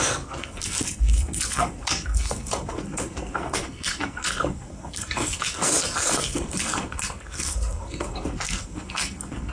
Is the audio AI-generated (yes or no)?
yes